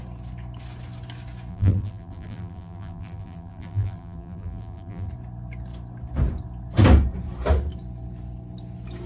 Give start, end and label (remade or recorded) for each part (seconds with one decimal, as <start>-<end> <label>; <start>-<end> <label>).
0.0-1.5 recorded; 1.5-5.1 remade; 5.1-9.1 recorded